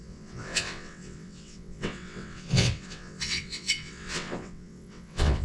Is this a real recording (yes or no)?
no